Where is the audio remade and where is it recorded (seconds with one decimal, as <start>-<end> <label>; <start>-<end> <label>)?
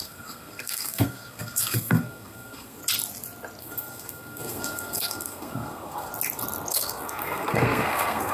0.0-2.8 remade; 2.8-3.6 recorded; 3.6-6.1 remade; 6.1-6.7 recorded; 6.7-8.3 remade